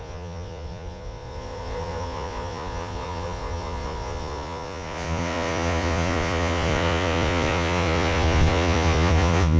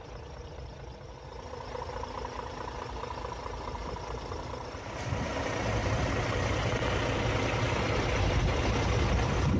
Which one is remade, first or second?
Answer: first